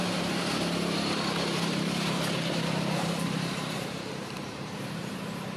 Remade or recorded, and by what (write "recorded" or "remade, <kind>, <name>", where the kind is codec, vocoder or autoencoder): remade, vocoder, BigVGAN v2